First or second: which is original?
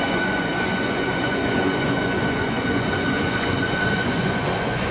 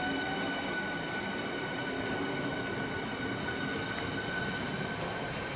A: second